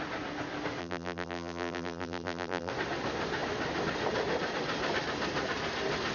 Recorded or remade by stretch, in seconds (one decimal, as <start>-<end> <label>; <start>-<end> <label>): 0.0-0.8 recorded; 0.8-2.7 remade; 2.7-6.1 recorded